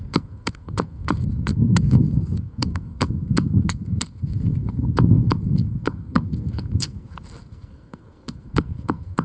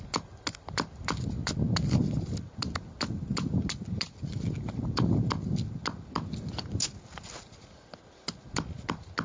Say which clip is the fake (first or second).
first